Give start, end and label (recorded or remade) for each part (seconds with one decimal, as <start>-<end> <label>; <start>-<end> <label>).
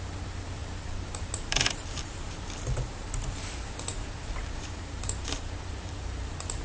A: 0.0-0.6 recorded; 0.6-2.5 remade; 2.5-3.9 recorded; 3.9-6.6 remade